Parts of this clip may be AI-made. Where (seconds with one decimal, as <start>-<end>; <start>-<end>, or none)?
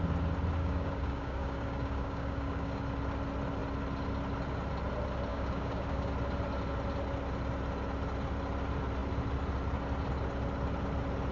0.6-2.8; 5.3-6.1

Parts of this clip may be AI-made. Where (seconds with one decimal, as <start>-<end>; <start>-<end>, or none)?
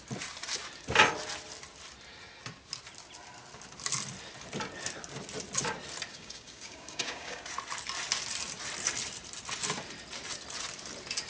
6.1-7.4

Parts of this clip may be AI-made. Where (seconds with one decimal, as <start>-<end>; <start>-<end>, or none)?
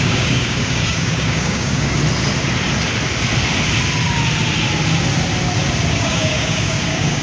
0.0-2.0; 5.9-7.2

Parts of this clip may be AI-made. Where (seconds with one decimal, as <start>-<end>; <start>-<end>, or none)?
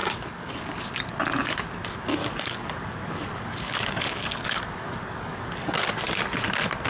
0.0-0.6; 2.1-6.2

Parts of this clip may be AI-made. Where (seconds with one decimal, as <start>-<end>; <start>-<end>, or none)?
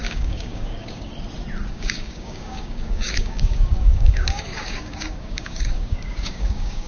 0.0-1.1; 1.7-6.9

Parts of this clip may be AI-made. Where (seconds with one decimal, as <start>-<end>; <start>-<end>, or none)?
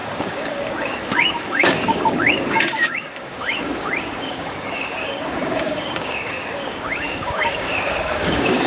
0.0-8.7